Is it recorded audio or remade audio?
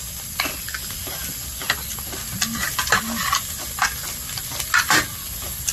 recorded